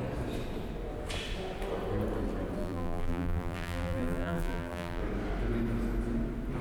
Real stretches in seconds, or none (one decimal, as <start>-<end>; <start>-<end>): 0.0-2.6; 5.0-6.6